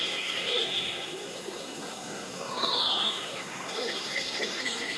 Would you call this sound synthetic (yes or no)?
yes